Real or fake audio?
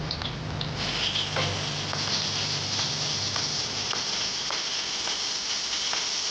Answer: real